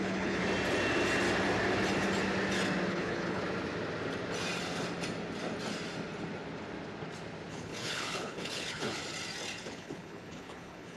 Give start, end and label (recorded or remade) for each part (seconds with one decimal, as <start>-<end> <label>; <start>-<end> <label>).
0.0-0.4 remade; 0.4-2.9 recorded; 2.9-3.4 remade; 3.4-7.5 recorded; 7.5-9.0 remade; 9.0-9.6 recorded; 9.6-11.0 remade